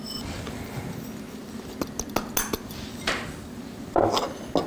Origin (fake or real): real